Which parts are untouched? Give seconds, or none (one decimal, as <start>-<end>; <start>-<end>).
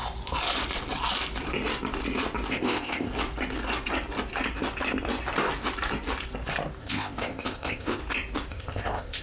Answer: 0.0-2.5; 3.1-6.8; 8.0-8.5